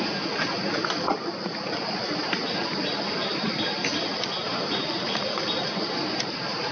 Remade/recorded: remade